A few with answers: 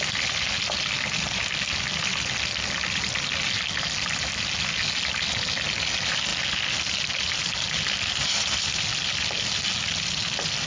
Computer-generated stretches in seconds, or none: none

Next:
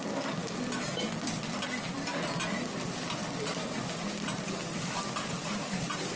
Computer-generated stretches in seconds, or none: none